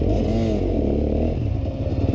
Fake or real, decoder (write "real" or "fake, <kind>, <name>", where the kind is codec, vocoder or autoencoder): real